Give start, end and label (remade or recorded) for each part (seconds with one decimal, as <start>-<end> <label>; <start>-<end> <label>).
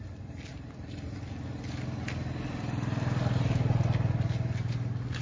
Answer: 0.0-0.5 recorded; 0.5-1.3 remade; 1.3-5.2 recorded